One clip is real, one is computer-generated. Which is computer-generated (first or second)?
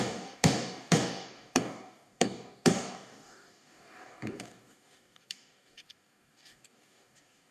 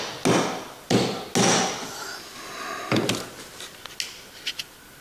first